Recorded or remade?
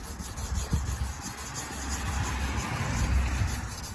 recorded